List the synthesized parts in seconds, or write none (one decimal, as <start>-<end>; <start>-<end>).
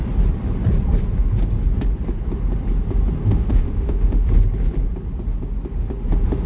3.2-4.3